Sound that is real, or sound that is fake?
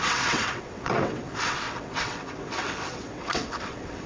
fake